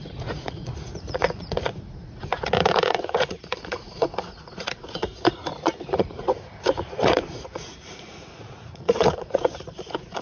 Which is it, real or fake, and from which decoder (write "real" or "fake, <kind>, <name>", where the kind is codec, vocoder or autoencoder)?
fake, vocoder, Vocos